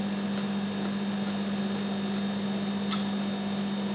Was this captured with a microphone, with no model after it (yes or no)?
yes